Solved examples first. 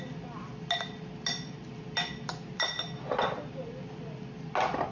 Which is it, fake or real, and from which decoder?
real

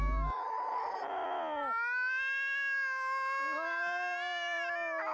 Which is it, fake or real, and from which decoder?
real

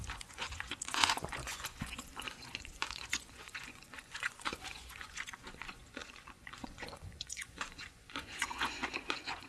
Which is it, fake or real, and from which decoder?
fake, vocoder, Vocos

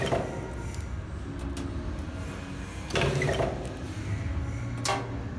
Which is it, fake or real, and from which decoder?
real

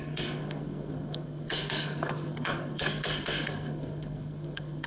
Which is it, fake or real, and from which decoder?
fake, codec, SNAC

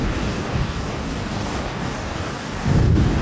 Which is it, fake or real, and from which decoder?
fake, codec, DAC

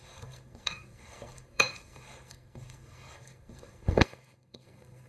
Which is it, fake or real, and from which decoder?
fake, codec, SNAC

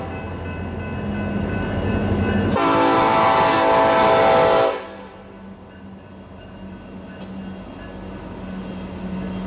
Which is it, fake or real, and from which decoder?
real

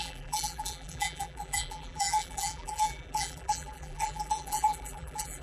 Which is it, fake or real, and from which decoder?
fake, vocoder, BigVGAN v2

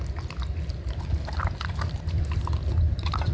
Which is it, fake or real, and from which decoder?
real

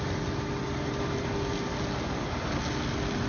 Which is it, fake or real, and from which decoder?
real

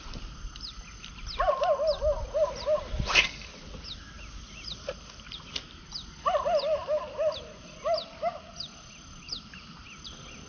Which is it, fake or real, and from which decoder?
real